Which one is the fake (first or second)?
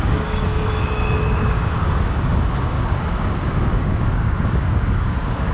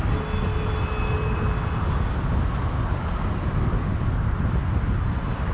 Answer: first